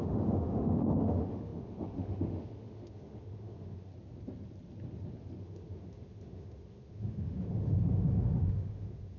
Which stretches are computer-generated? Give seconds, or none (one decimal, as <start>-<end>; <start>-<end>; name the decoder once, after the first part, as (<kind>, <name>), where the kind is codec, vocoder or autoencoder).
0.0-3.9 (autoencoder, DAC-VAE); 5.4-9.2

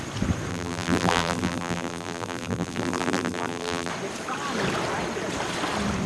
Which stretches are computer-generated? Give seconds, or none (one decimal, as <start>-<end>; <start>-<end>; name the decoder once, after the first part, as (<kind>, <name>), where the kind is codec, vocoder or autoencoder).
0.5-3.9 (vocoder, BigVGAN v2)

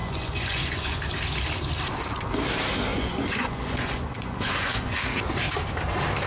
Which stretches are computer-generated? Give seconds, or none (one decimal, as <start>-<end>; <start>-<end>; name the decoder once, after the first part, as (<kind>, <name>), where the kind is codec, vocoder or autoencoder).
0.0-1.0 (vocoder, Vocos); 2.9-5.0

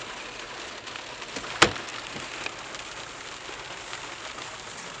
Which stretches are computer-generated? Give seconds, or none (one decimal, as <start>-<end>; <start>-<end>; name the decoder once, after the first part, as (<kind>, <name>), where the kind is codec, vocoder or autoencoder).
none

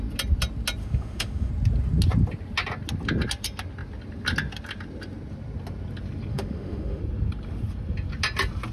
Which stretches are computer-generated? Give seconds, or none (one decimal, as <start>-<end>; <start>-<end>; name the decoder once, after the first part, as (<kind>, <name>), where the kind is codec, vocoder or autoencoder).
0.8-1.5 (autoencoder, DAC-VAE); 6.3-7.0

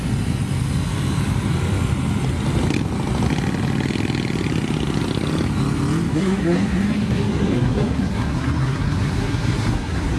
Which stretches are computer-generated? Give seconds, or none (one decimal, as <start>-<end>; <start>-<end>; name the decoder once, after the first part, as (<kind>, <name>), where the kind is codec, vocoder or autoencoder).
6.1-10.2 (codec, SNAC)

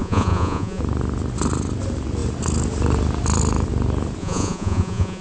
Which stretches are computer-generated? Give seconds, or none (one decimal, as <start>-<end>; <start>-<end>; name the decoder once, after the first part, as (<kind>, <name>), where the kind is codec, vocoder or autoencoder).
0.0-0.8 (vocoder, Vocos); 4.2-5.2

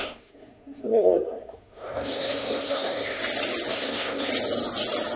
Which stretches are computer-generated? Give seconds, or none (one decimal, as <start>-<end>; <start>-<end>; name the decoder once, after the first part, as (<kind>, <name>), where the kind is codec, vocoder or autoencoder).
0.0-3.2 (codec, SNAC); 3.7-4.3